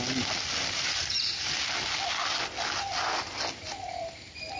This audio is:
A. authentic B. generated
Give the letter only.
A